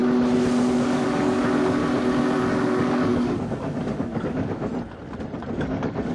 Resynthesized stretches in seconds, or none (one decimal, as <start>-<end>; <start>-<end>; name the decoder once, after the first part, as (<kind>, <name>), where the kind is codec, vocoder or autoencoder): 0.7-1.8 (codec, DAC); 2.5-4.7; 5.5-6.1